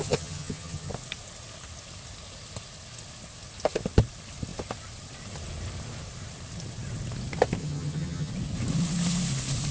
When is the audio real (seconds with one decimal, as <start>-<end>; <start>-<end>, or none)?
0.9-7.6; 8.3-9.7